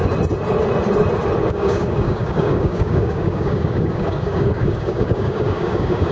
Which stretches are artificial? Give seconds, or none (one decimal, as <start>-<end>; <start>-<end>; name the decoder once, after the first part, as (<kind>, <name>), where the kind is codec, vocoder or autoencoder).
1.5-6.1 (codec, DAC)